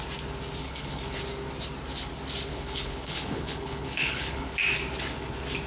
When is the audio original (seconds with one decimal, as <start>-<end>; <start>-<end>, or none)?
0.0-0.6; 1.2-2.5; 4.5-5.7